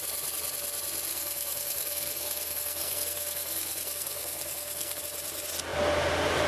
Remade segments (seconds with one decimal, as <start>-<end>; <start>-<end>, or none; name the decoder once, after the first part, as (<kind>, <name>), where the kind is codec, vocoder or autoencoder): 1.1-5.0 (codec, SNAC)